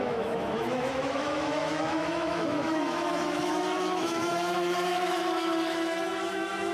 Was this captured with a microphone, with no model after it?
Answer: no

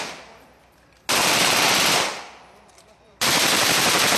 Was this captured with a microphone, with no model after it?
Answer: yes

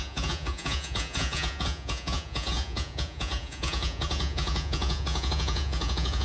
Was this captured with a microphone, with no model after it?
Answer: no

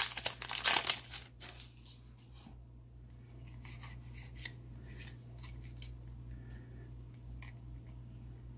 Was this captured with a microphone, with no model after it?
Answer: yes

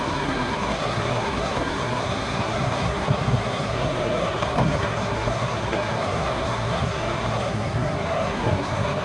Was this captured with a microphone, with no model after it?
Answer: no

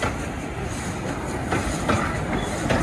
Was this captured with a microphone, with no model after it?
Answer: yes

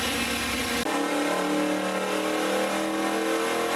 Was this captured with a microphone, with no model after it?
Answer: yes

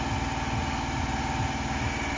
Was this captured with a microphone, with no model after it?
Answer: yes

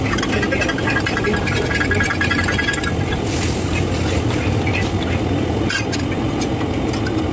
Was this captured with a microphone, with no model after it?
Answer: yes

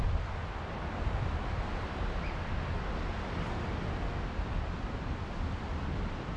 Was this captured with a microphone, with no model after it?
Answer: yes